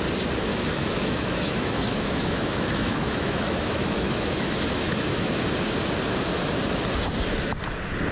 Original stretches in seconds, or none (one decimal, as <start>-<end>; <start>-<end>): 0.0-0.5; 5.4-8.1